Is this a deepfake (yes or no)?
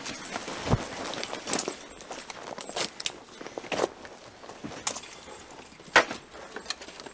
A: no